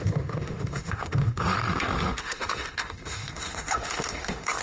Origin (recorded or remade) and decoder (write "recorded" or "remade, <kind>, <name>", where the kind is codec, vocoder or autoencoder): remade, autoencoder, DAC-VAE